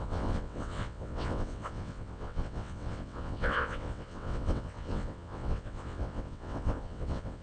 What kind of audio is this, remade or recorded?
remade